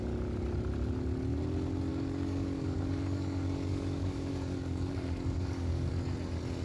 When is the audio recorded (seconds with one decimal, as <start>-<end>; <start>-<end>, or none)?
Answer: 0.0-1.9; 5.9-6.6